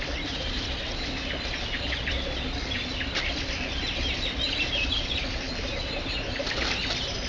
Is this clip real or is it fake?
real